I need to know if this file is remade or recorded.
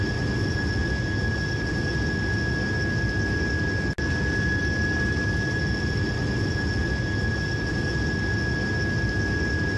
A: recorded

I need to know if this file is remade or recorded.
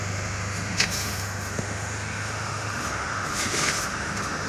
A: remade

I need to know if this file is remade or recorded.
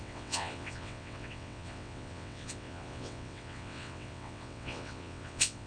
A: remade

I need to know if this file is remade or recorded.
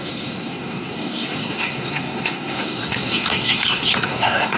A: remade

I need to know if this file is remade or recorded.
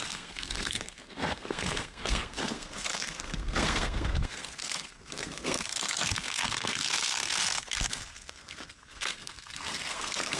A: remade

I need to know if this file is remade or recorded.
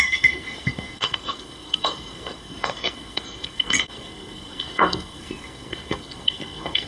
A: remade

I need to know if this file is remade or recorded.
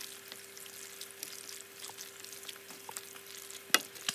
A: recorded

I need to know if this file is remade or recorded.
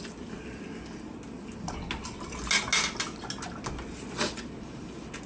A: recorded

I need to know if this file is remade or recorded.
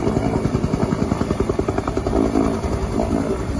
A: recorded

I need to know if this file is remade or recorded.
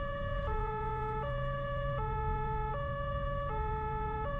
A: remade